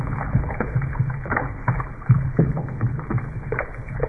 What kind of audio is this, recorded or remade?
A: remade